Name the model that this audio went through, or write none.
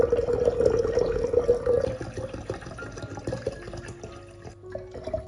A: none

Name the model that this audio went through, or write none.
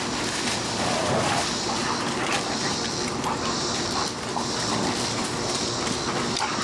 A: none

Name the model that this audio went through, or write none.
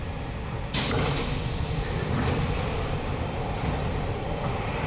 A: vocoder, BigVGAN v2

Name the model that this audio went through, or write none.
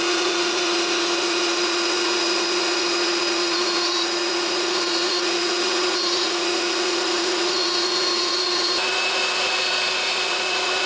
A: vocoder, Vocos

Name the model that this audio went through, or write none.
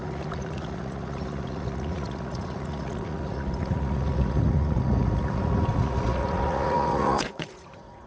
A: vocoder, Vocos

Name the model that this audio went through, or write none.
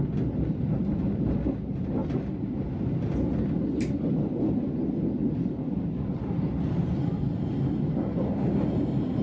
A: none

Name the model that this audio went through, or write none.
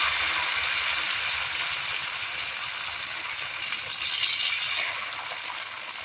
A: none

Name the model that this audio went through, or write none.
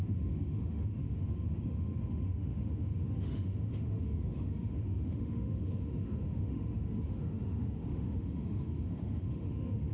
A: autoencoder, DAC-VAE